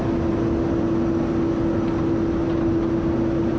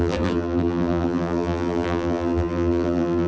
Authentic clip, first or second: first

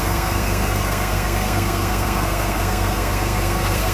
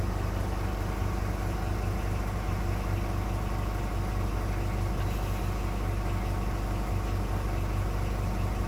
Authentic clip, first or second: second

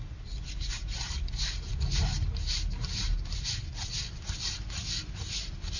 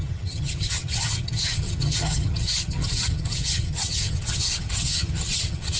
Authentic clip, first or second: first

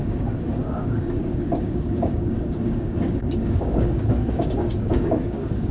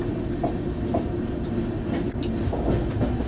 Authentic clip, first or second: second